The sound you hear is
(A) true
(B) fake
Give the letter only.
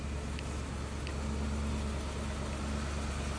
A